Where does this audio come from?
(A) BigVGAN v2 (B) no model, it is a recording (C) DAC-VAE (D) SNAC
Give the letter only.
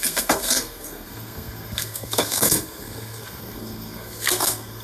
D